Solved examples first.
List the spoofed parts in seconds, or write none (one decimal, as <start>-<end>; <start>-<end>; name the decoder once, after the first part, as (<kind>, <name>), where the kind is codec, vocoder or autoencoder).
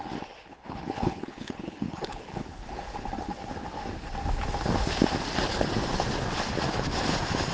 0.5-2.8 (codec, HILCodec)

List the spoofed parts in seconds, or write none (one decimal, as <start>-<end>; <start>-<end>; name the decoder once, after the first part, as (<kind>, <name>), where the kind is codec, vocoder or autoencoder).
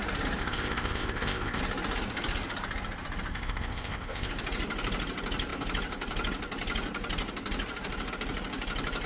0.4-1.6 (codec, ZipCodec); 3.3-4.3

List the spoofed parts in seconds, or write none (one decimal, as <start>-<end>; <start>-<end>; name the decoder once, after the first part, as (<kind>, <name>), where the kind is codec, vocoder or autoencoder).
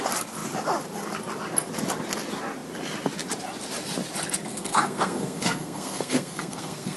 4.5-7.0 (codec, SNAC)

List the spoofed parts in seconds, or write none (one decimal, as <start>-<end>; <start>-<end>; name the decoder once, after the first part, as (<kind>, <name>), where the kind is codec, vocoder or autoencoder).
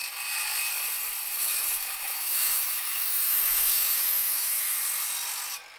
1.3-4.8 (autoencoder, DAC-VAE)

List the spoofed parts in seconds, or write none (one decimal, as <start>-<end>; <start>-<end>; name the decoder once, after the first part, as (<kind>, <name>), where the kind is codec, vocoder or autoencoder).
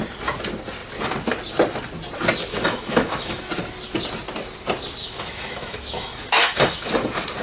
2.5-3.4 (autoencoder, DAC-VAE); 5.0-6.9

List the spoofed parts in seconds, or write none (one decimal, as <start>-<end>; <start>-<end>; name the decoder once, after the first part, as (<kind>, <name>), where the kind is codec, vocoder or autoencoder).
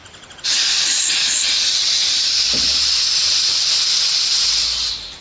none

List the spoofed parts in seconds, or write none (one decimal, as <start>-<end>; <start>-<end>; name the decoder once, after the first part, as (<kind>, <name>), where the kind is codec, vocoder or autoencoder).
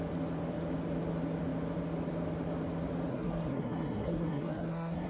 3.1-5.1 (codec, SNAC)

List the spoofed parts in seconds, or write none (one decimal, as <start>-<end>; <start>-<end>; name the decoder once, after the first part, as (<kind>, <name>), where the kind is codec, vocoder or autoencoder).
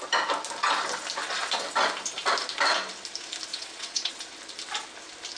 3.5-4.1 (vocoder, WaveNeXt)